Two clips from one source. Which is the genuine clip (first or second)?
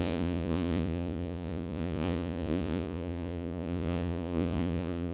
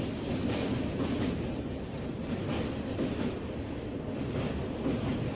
second